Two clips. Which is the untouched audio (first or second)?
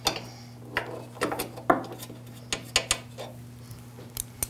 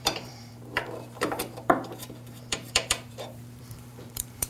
first